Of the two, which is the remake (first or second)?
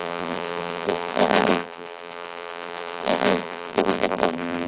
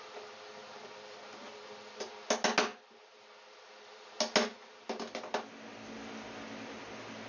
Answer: first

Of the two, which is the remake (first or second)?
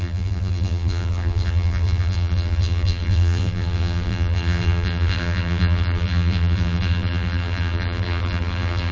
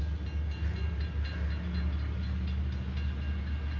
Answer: first